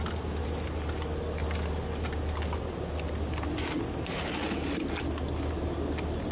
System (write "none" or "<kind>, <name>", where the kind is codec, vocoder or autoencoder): none